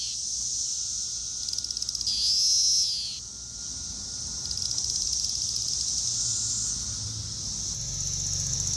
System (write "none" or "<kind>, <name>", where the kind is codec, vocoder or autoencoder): none